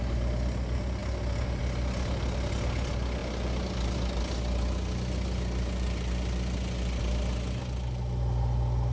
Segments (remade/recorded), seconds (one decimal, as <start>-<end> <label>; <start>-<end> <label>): 0.0-8.9 recorded

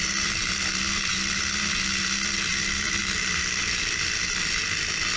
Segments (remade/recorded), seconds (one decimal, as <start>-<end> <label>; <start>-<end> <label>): 0.0-5.2 recorded

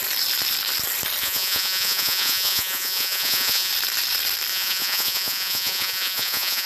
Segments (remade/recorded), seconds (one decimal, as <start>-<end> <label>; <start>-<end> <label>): 0.0-1.2 recorded; 1.2-3.7 remade; 3.7-4.5 recorded; 4.5-6.7 remade

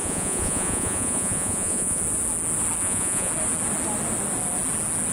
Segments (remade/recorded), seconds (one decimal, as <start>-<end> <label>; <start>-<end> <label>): 0.0-2.0 remade; 2.0-2.8 recorded; 2.8-3.3 remade; 3.3-5.1 recorded